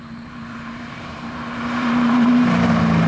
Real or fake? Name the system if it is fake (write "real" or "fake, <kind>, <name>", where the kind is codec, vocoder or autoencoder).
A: fake, vocoder, BigVGAN v2